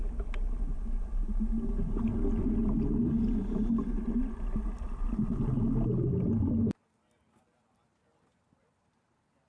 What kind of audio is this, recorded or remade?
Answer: recorded